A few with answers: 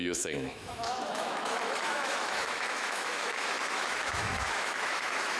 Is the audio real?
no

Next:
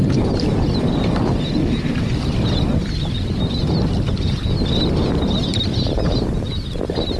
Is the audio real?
yes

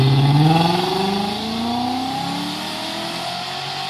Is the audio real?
yes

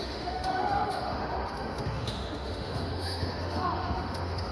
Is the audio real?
no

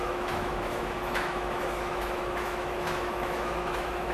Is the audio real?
no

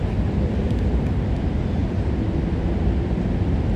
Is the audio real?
yes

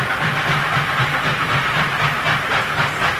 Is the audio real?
yes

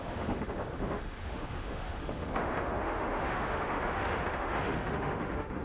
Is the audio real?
no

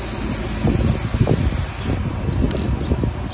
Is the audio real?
yes